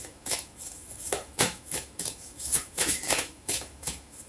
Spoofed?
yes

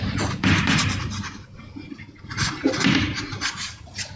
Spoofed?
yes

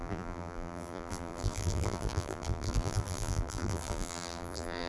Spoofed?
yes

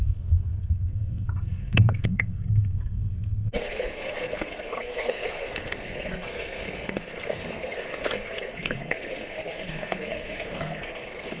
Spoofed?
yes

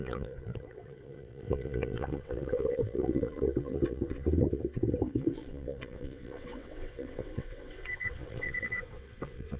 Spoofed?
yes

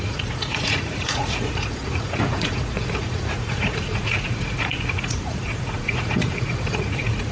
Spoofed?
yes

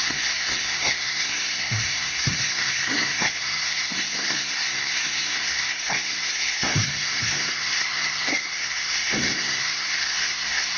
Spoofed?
yes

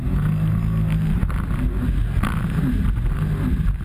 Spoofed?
no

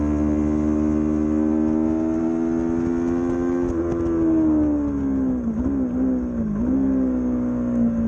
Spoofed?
no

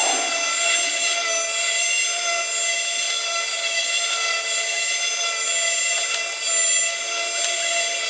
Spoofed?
no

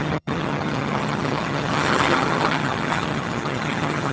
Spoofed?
yes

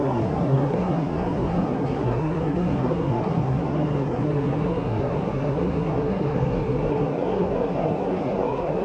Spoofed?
yes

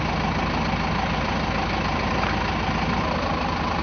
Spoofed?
no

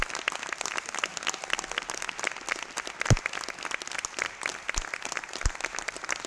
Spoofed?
no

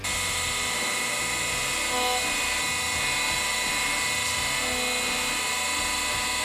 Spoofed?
no